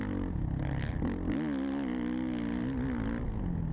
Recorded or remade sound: recorded